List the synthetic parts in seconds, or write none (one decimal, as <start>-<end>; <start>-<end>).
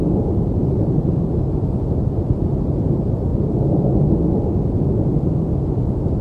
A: 0.0-3.3; 5.5-6.2